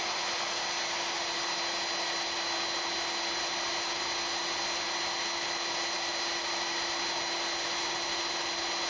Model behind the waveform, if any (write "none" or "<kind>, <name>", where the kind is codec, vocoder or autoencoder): none